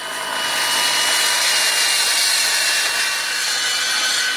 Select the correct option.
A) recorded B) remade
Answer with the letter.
A